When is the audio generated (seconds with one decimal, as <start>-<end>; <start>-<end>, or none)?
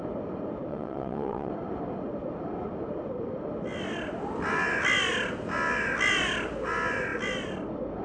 0.7-1.5